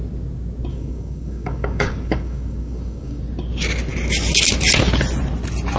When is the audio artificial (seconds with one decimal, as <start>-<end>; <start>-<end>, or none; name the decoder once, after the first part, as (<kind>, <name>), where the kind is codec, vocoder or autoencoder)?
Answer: 0.7-3.2 (codec, DAC)